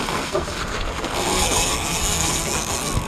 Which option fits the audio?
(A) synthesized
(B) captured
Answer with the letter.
A